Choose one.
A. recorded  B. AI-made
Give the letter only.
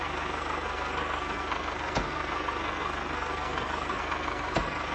B